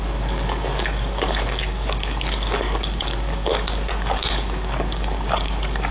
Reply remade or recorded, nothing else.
remade